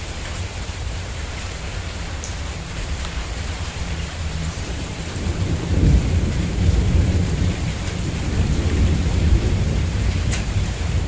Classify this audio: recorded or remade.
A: remade